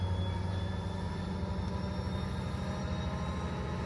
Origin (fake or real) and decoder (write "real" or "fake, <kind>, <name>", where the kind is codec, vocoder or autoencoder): real